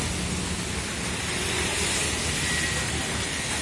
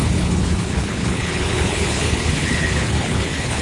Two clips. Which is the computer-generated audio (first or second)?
second